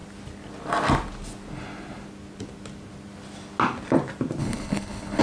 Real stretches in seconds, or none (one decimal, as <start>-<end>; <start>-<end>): 0.0-4.4

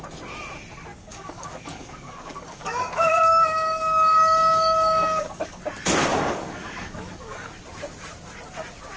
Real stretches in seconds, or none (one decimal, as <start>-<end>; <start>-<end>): 0.0-0.9; 5.6-6.1; 7.5-9.0

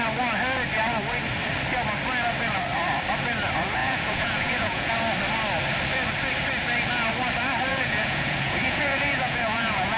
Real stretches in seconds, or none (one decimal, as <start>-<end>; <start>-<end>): 0.0-3.8; 4.9-7.7

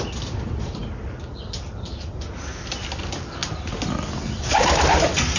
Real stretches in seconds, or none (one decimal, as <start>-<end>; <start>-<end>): 0.0-5.4

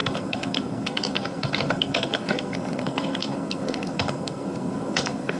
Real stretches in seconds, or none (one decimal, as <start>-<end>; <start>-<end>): none

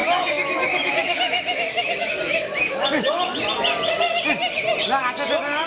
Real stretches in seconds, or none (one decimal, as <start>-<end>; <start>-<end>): 3.4-5.7

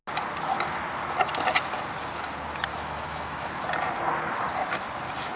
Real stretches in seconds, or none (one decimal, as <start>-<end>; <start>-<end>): 0.0-2.7; 3.5-5.4

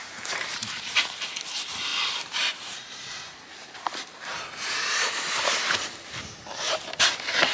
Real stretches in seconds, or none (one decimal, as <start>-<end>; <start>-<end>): 1.9-6.4